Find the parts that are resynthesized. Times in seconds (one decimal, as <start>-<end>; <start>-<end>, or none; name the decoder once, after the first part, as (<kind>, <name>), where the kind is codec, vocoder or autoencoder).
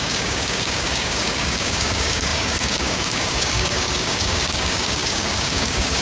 0.0-6.0 (codec, DAC)